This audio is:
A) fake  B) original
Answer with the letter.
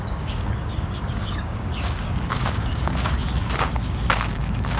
A